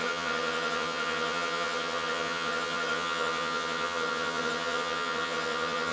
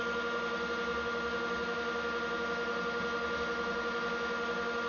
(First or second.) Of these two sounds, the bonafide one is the second